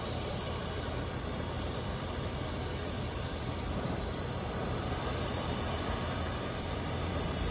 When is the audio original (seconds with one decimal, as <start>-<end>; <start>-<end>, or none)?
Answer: 0.6-1.3

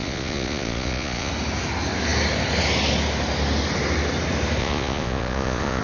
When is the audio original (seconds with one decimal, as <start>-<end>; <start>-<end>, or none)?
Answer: 1.3-4.6